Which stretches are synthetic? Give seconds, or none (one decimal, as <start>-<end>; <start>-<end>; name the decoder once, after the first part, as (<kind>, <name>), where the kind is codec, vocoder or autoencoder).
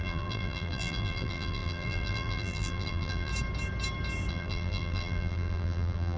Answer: 0.0-3.3 (vocoder, BigVGAN v2); 4.3-6.2